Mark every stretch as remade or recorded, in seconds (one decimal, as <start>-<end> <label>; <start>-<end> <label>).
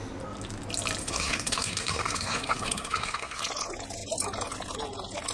0.0-1.0 recorded; 1.0-3.4 remade; 3.4-5.3 recorded